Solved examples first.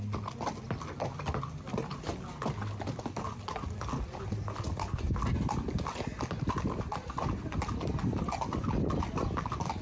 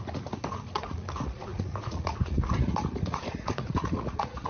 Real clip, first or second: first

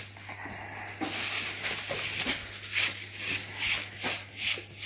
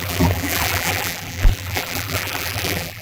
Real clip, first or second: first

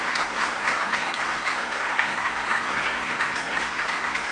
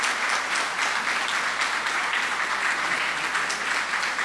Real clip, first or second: second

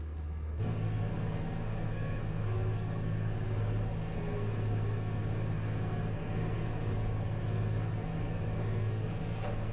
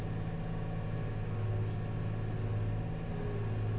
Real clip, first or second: second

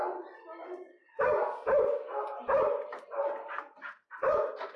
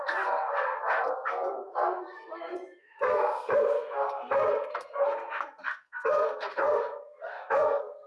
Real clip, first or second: first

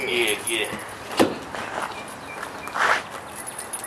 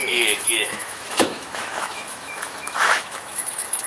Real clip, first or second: first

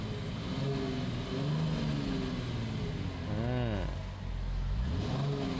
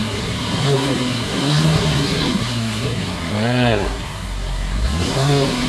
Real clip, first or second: first